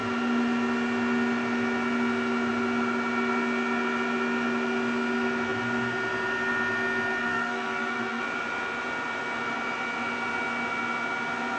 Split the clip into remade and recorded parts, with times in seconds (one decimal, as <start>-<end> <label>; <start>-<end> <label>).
0.0-7.2 recorded; 7.2-8.2 remade; 8.2-11.6 recorded